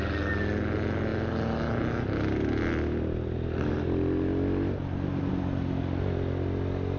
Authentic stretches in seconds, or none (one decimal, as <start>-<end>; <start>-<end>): 0.0-7.0